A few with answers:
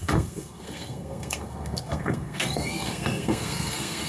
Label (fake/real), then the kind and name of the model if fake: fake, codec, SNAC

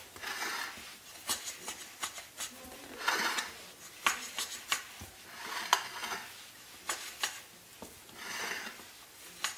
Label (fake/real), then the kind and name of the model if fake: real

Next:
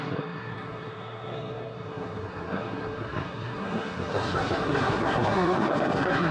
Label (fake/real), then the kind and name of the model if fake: fake, codec, SNAC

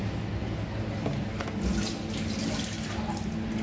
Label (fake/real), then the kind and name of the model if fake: real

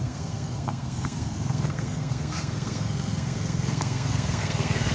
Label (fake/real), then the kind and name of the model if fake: fake, codec, SNAC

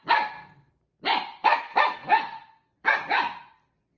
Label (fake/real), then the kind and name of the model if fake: real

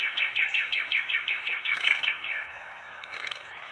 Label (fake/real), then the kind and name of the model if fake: fake, codec, SNAC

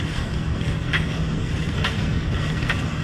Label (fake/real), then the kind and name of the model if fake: fake, codec, SNAC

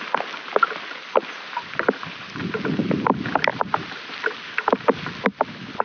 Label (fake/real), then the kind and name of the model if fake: real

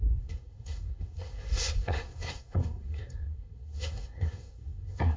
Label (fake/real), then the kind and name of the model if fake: fake, codec, SNAC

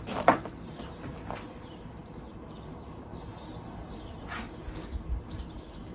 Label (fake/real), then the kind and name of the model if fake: real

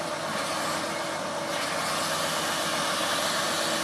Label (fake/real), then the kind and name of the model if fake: real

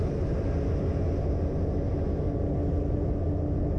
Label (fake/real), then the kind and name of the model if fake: real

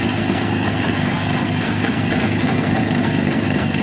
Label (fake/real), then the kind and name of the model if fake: fake, codec, SNAC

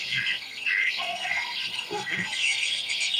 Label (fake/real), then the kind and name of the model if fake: fake, codec, SNAC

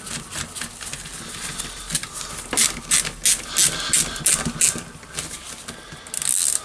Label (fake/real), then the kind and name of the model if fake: real